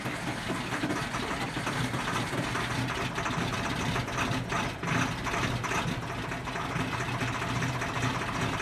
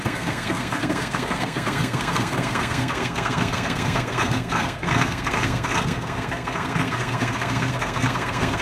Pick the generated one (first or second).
second